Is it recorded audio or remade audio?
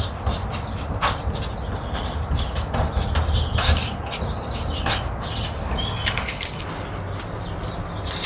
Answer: recorded